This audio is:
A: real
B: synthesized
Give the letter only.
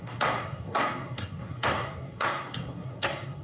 B